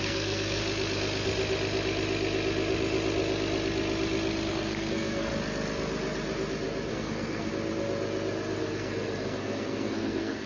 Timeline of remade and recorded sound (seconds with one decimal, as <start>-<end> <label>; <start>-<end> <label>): 0.0-0.6 remade; 0.6-4.5 recorded; 4.5-5.3 remade; 5.3-6.9 recorded; 6.9-7.5 remade; 7.5-8.6 recorded; 8.6-10.5 remade